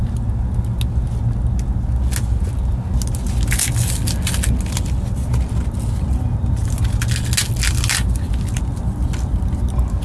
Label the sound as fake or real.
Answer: real